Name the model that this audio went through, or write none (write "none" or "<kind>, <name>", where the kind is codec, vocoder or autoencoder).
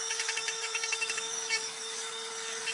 codec, DAC